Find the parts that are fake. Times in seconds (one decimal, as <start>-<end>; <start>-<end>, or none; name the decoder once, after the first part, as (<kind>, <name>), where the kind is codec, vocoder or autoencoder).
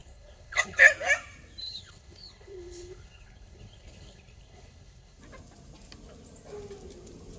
0.0-0.8 (codec, HILCodec); 1.6-5.2